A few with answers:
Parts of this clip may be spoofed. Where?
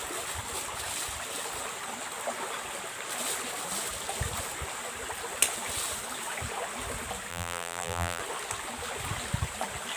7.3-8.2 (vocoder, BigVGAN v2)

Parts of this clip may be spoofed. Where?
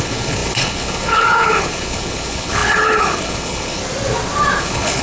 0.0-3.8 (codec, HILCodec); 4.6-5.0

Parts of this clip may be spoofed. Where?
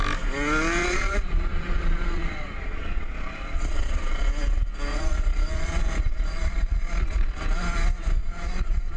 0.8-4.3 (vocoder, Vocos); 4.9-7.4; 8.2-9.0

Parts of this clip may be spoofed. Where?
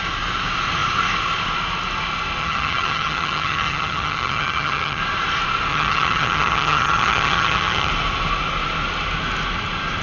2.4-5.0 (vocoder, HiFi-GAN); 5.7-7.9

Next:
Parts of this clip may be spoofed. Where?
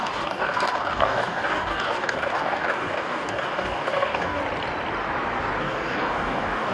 0.0-4.4 (codec, DAC); 5.6-6.7